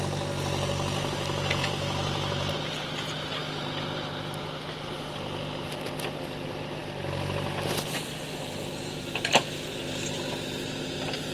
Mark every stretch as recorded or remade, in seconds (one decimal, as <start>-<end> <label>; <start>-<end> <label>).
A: 0.0-1.6 recorded; 1.6-2.5 remade; 2.5-11.3 recorded